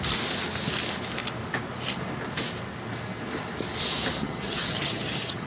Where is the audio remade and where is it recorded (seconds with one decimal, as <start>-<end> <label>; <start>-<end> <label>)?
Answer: 0.0-4.2 recorded; 4.2-5.5 remade